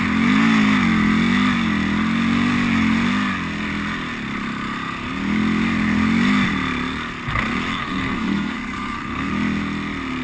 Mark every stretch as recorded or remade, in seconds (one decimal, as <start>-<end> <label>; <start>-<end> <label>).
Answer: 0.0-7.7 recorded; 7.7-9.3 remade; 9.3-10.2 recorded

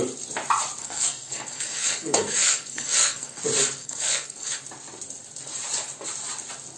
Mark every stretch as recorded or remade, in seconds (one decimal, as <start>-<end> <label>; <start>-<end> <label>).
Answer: 0.0-0.8 recorded; 0.8-3.4 remade; 3.4-3.8 recorded; 3.8-4.6 remade; 4.6-6.8 recorded

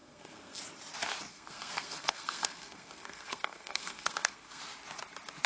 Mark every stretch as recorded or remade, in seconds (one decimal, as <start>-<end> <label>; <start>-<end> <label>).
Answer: 0.0-0.6 remade; 0.6-1.3 recorded; 1.3-4.6 remade; 4.6-5.5 recorded